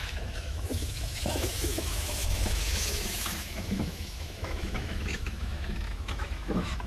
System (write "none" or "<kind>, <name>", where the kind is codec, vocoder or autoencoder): autoencoder, DAC-VAE